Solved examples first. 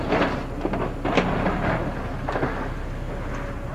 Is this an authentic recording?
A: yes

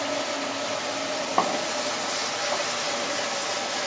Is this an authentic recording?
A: yes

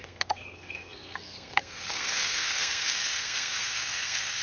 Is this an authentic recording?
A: no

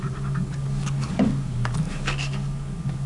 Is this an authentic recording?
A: no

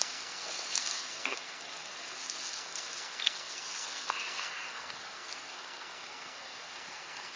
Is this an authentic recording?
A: no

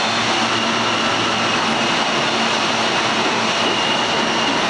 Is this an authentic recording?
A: yes